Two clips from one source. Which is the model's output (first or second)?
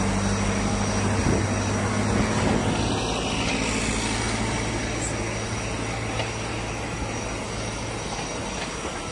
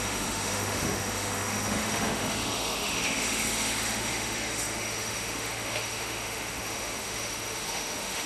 second